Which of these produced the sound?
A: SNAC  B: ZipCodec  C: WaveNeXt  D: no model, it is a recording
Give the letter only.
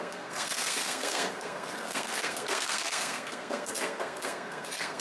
A